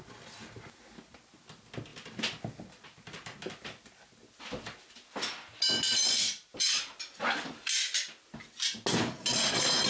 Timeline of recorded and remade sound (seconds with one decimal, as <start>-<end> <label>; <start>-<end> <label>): 0.0-9.9 recorded